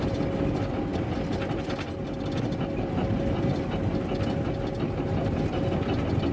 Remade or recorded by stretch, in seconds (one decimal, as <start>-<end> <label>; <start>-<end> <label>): 0.0-6.3 recorded